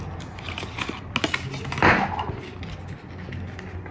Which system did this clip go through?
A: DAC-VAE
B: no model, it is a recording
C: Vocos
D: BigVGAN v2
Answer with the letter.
B